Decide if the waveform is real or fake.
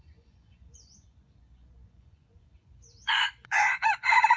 fake